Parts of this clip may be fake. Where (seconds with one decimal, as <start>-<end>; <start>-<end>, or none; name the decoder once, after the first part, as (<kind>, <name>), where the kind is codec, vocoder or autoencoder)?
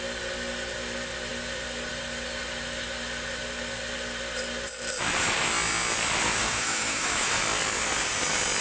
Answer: 6.4-7.3 (autoencoder, DAC-VAE)